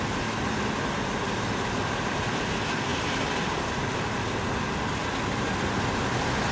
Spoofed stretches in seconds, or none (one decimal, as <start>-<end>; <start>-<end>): 2.9-3.7